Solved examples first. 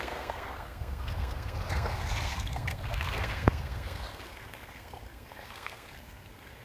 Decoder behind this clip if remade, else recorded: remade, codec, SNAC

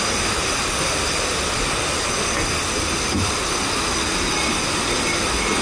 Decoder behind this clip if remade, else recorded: recorded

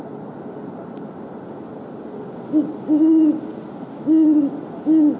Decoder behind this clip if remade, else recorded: recorded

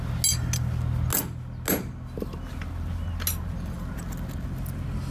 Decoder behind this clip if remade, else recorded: recorded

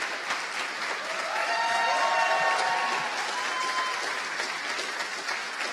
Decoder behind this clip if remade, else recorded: recorded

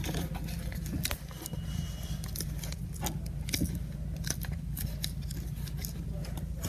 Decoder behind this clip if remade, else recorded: recorded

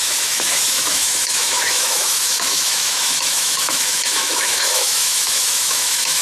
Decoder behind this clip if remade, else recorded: remade, autoencoder, DAC-VAE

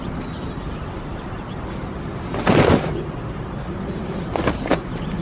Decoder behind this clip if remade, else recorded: recorded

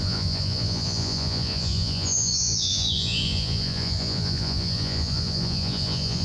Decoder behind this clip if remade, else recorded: remade, vocoder, Vocos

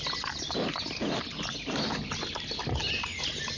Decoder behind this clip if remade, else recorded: recorded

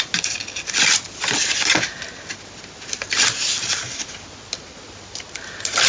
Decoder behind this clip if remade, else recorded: recorded